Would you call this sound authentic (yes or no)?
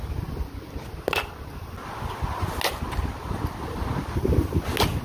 yes